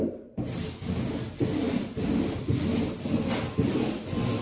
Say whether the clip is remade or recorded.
recorded